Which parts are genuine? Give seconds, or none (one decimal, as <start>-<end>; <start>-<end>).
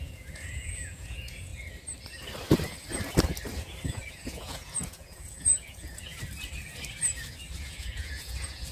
1.5-4.1; 6.1-7.6